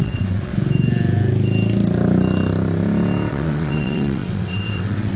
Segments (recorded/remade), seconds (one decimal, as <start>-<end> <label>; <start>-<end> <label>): 0.0-0.5 remade; 0.5-3.3 recorded; 3.3-5.2 remade